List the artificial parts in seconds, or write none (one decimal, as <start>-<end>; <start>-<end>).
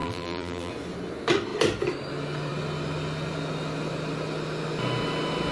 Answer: 0.0-0.7